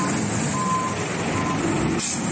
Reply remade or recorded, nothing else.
recorded